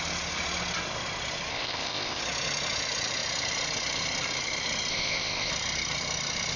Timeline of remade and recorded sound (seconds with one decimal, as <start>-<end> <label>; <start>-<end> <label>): 0.0-1.5 recorded; 1.5-2.2 remade; 2.2-4.9 recorded; 4.9-5.5 remade; 5.5-6.6 recorded